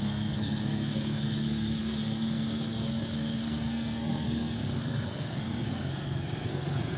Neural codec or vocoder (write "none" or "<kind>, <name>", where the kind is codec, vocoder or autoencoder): codec, SNAC